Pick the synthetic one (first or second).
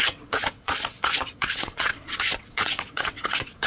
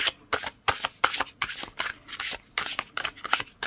first